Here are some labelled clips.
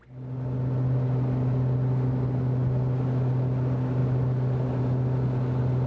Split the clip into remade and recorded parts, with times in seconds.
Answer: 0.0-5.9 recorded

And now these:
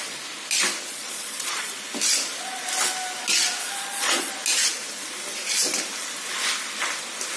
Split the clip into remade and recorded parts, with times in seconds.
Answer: 0.0-0.9 recorded; 0.9-1.7 remade; 1.7-3.6 recorded; 3.6-4.3 remade; 4.3-7.4 recorded

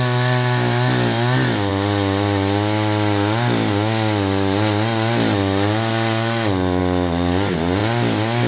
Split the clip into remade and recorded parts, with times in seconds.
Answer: 0.0-8.5 recorded